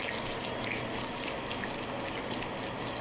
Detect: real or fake real